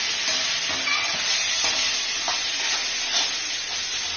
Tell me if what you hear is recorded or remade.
recorded